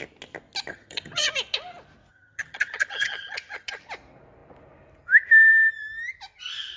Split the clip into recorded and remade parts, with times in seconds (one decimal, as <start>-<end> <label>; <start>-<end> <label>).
0.0-0.7 recorded; 0.7-1.3 remade; 1.3-2.1 recorded; 2.1-3.8 remade; 3.8-6.8 recorded